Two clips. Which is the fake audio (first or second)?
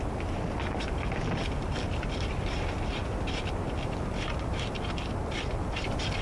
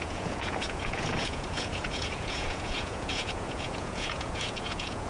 second